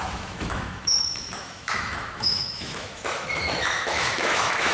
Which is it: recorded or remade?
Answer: remade